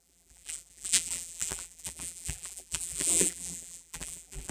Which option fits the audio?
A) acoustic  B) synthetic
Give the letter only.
B